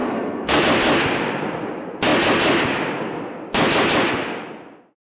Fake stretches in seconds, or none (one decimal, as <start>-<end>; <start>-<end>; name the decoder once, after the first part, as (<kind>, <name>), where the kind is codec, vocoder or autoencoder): 0.0-0.6 (codec, SNAC)